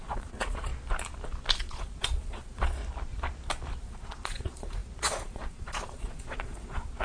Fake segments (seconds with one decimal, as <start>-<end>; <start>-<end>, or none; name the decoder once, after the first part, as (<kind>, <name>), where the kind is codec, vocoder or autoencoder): 0.0-0.7 (vocoder, Vocos); 1.6-2.8; 3.8-7.0